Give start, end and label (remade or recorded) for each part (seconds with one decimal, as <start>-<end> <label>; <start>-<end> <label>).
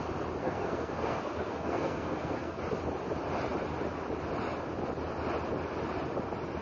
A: 0.0-0.4 recorded; 0.4-2.6 remade; 2.6-6.6 recorded